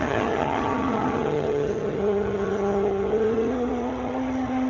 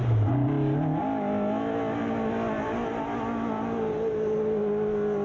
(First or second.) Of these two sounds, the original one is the second